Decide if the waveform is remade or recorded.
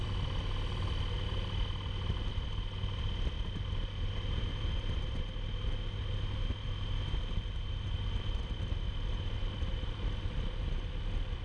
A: recorded